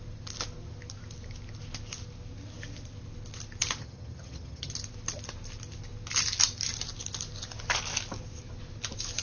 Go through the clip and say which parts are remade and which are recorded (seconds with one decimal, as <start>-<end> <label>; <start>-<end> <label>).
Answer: 0.0-3.8 recorded; 3.8-4.7 remade; 4.7-9.2 recorded